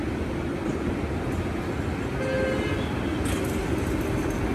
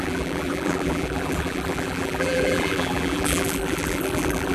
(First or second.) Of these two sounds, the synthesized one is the second